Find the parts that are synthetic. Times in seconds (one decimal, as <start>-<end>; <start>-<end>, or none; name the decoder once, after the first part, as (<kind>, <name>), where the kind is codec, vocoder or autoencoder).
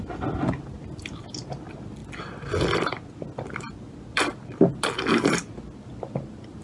none